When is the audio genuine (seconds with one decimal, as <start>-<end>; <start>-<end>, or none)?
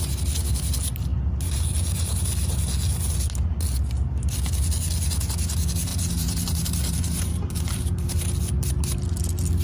0.0-5.9; 8.2-9.6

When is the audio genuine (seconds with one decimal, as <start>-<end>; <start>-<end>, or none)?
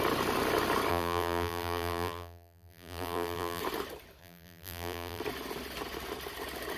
0.0-0.9; 3.6-4.2; 5.2-6.8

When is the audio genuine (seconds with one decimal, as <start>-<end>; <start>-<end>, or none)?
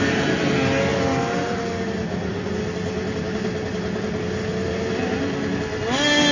0.0-6.3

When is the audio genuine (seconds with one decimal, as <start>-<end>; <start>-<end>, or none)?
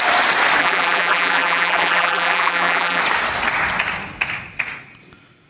0.0-0.6; 3.0-5.5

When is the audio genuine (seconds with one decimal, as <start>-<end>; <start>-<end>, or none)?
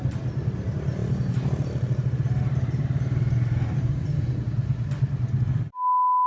0.0-1.0; 4.3-6.3